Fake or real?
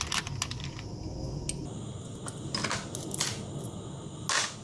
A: real